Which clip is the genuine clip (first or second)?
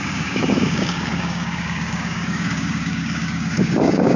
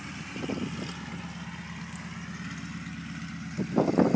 second